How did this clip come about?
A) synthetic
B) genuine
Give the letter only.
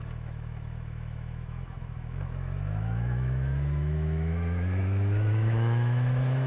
A